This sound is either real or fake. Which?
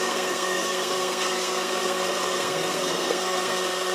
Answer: fake